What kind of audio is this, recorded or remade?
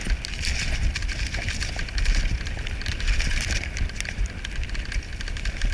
recorded